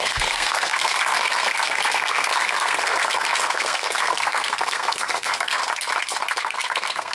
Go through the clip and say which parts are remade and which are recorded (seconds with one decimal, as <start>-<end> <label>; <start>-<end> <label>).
0.0-5.6 remade; 5.6-6.4 recorded; 6.4-7.1 remade